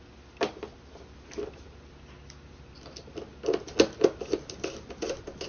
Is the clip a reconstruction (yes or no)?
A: no